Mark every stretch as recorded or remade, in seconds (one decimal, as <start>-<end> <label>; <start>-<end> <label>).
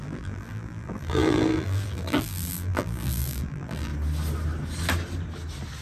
0.0-3.9 remade; 3.9-5.8 recorded